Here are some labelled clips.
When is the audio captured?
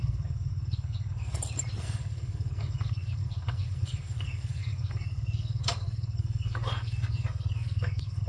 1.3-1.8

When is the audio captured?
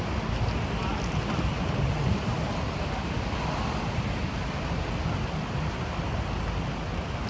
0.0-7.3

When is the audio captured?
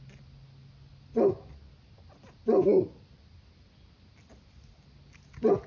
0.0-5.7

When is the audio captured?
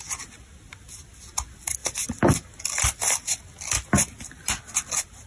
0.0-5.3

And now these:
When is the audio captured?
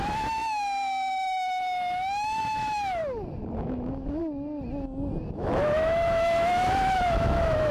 3.0-3.6; 4.2-5.3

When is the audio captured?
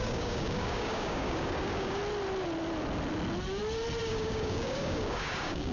2.0-4.0